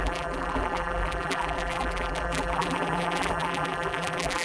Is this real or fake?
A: fake